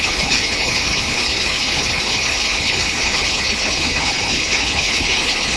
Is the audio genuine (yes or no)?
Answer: no